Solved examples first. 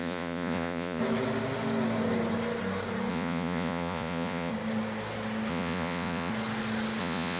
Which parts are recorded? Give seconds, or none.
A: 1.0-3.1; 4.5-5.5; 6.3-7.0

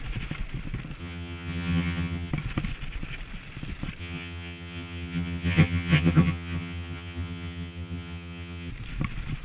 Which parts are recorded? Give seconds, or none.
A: 0.0-1.0; 2.3-4.0; 8.7-9.4

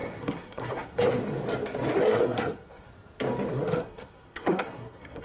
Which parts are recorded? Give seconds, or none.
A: 1.2-2.0; 2.9-3.5

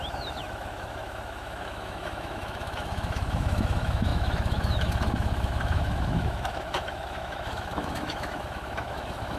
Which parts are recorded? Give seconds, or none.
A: none